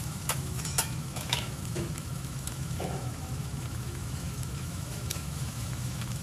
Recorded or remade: remade